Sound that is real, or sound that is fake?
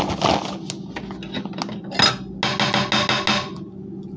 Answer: real